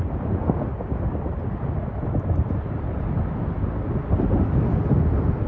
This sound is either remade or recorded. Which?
recorded